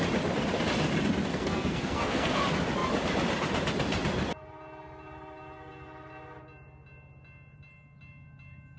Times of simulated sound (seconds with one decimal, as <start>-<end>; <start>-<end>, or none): 1.3-2.4